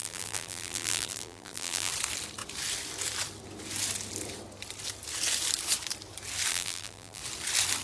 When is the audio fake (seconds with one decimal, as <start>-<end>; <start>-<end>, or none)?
0.0-1.9; 6.5-7.2